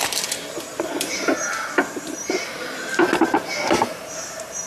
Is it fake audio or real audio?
real